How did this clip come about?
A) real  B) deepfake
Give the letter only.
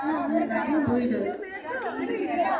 A